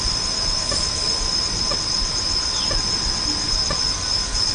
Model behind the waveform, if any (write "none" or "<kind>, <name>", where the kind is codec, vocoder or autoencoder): none